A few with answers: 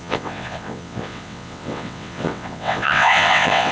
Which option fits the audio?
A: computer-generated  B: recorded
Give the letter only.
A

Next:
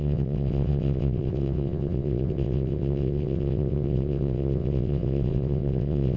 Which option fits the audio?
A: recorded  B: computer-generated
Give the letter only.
B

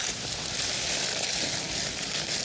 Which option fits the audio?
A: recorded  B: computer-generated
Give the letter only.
A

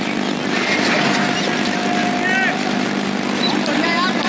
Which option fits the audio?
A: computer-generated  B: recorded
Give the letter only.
B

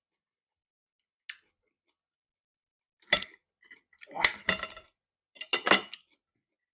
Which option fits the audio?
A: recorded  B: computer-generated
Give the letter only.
A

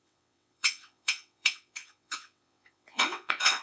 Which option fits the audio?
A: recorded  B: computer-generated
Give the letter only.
B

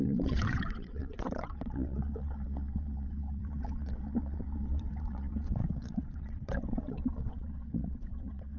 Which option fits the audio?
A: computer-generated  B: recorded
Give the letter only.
A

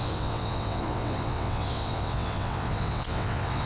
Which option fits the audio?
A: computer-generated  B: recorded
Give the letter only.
A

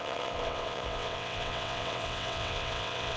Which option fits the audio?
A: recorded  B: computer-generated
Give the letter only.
B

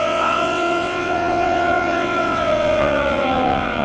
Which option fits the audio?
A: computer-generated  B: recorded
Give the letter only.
A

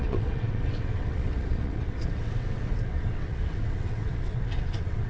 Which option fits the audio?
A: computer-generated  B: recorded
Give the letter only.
A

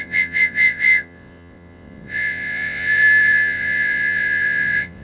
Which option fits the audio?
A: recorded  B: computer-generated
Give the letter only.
B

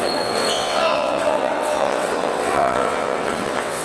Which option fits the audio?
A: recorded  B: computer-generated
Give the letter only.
B